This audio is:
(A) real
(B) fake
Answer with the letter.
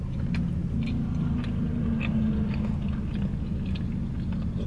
A